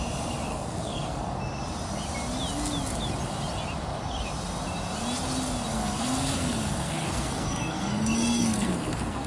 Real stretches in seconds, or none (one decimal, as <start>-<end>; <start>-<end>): 0.0-0.5; 1.4-5.7